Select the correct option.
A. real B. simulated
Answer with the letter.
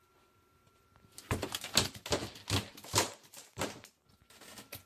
A